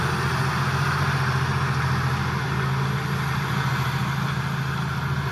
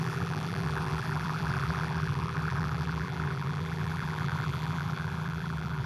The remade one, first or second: second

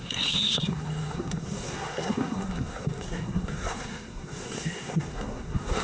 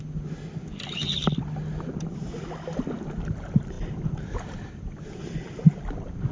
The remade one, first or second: first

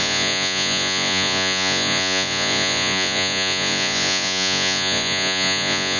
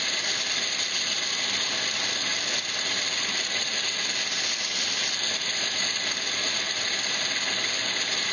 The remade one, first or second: first